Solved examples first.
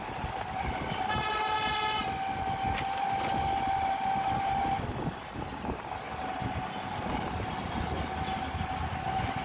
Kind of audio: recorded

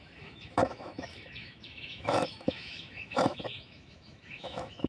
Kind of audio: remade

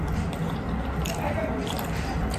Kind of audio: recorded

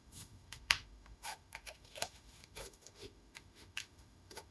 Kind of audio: remade